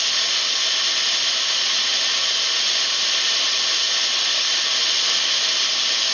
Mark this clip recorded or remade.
recorded